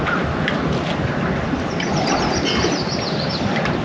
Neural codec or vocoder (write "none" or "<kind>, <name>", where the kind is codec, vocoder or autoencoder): none